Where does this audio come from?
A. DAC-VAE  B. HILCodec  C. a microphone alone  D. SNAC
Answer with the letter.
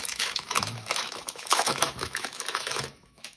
A